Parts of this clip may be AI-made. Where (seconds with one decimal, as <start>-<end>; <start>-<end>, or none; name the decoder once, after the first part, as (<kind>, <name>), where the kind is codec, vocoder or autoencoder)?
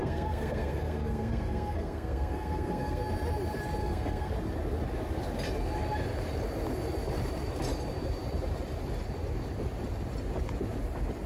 0.0-3.0 (codec, SNAC); 3.8-4.3